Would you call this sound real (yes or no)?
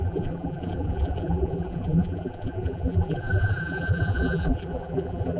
no